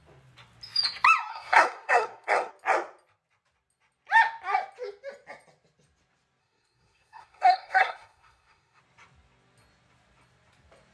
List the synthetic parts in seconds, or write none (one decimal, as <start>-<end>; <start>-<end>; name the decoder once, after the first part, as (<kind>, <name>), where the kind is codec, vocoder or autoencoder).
1.3-2.5 (codec, SNAC); 6.4-8.8